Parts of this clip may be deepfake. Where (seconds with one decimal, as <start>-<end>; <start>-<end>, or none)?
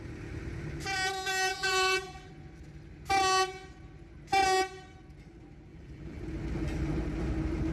1.5-2.3; 5.7-6.2